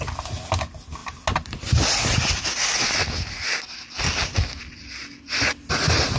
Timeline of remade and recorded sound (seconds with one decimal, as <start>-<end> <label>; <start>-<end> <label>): 0.0-6.2 recorded